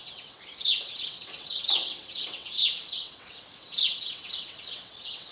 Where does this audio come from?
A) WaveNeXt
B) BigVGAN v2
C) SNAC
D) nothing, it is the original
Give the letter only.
A